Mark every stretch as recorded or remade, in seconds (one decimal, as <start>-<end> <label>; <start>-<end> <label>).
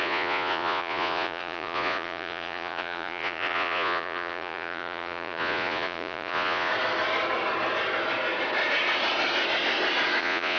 0.0-6.7 remade; 6.7-10.2 recorded; 10.2-10.6 remade